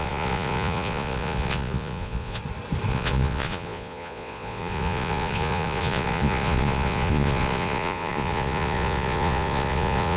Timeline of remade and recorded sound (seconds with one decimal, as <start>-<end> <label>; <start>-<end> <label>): 0.0-2.4 remade; 2.4-2.9 recorded; 2.9-10.2 remade